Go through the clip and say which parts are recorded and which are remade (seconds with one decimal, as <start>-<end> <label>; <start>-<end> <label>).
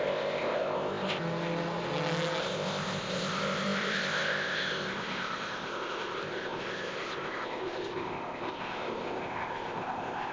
0.0-1.2 remade; 1.2-2.4 recorded; 2.4-10.3 remade